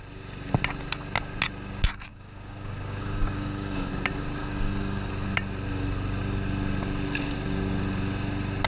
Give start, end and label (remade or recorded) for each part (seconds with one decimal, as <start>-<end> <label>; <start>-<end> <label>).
0.0-2.1 recorded; 2.1-3.9 remade; 3.9-4.4 recorded; 4.4-5.1 remade; 5.1-8.7 recorded